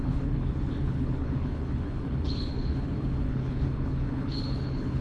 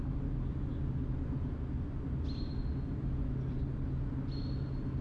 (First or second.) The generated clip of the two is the first